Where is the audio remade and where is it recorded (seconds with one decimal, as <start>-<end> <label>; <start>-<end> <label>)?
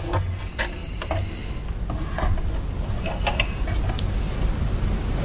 0.0-5.2 recorded